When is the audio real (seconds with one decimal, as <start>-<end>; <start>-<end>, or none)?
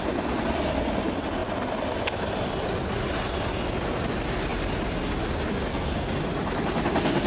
0.0-5.7; 6.2-7.3